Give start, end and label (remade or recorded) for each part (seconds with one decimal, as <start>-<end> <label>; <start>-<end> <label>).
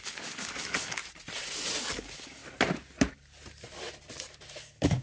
0.0-1.0 remade; 1.0-1.8 recorded; 1.8-2.4 remade; 2.4-4.6 recorded; 4.6-5.0 remade